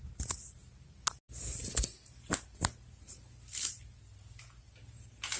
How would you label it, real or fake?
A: real